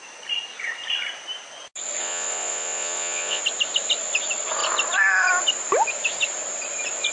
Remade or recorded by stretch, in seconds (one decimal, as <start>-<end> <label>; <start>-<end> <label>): 0.0-2.0 recorded; 2.0-3.4 remade; 3.4-7.1 recorded